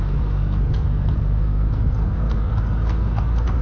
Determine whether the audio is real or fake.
fake